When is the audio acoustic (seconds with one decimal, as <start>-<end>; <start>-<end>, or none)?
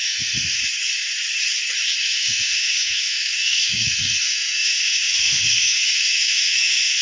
0.6-2.0